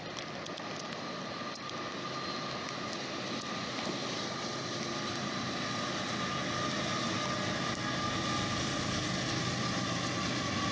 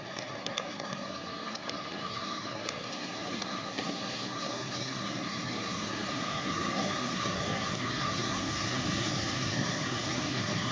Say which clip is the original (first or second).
first